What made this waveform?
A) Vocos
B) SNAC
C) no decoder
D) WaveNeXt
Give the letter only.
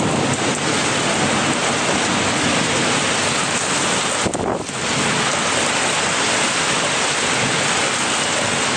C